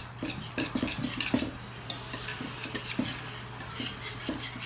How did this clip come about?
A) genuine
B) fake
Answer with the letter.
A